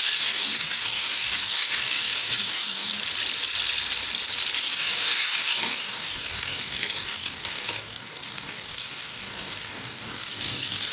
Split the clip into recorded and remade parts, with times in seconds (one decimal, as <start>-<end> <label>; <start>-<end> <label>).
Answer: 0.0-2.9 remade; 2.9-4.6 recorded; 4.6-10.9 remade